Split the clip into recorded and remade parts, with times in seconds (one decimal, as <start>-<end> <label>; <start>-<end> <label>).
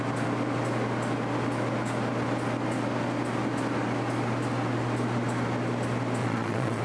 0.0-6.2 recorded; 6.2-6.8 remade